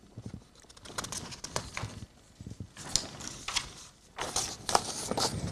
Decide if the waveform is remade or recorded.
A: recorded